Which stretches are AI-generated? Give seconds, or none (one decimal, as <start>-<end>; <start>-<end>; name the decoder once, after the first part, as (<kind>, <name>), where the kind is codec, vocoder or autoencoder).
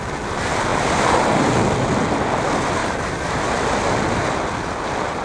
0.7-1.5 (vocoder, BigVGAN v2); 2.8-3.6